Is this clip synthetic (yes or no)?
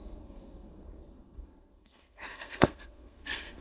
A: yes